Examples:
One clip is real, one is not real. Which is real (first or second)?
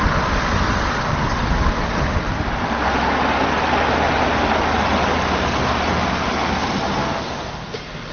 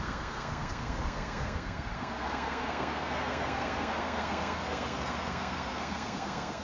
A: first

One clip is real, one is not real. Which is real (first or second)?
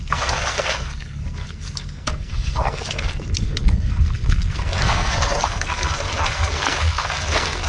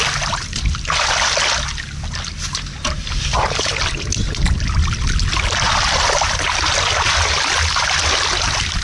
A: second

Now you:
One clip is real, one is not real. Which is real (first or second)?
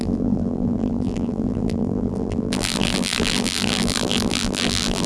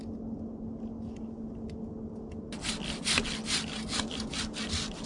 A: second